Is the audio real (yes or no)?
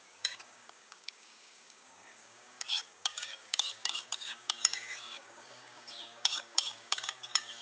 no